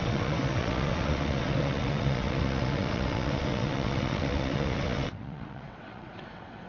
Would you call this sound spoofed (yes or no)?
yes